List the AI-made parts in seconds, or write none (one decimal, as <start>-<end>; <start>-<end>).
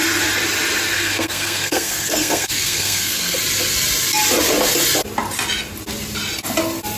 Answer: 0.9-3.4